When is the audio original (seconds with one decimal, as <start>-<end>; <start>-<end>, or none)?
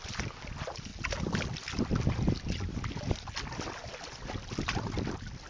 0.0-5.5